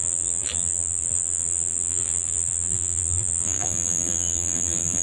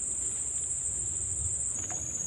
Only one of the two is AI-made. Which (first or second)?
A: first